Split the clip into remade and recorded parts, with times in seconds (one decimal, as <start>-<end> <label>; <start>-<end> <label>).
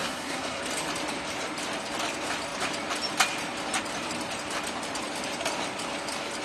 0.0-0.6 remade; 0.6-6.4 recorded